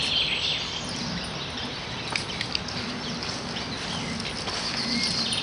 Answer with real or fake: real